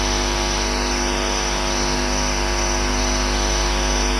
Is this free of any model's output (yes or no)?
yes